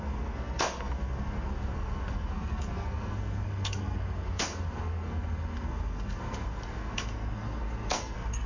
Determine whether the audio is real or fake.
fake